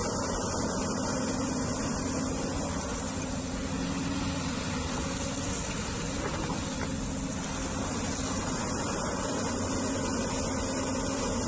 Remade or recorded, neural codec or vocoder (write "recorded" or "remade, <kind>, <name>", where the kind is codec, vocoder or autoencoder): recorded